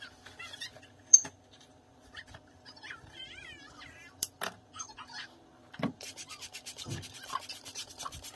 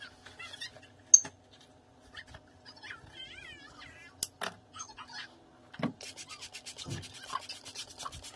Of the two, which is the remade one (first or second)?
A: first